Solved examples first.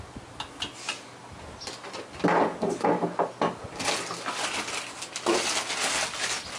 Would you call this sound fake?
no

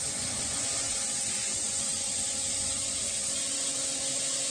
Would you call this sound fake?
yes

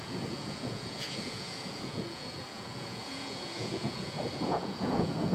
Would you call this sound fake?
yes